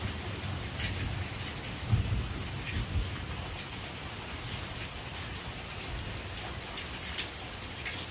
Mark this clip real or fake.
real